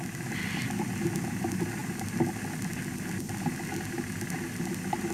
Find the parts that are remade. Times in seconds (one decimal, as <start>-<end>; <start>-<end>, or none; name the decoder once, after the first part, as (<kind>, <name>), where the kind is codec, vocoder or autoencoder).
none